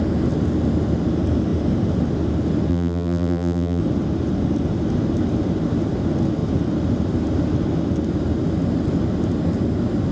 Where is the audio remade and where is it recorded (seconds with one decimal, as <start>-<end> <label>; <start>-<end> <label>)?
0.0-2.7 recorded; 2.7-3.8 remade; 3.8-10.1 recorded